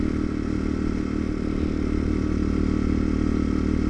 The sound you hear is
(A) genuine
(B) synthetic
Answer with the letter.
A